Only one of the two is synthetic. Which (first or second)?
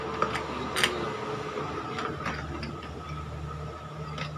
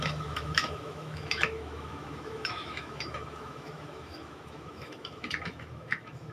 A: second